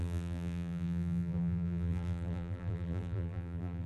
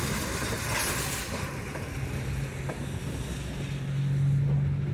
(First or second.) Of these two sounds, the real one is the second